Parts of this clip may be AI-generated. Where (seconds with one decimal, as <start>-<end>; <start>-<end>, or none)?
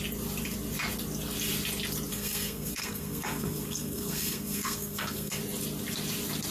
2.1-5.4